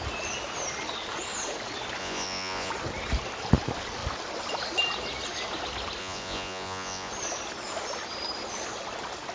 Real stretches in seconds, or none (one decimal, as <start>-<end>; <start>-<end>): 0.0-2.0; 2.7-6.0; 7.1-9.3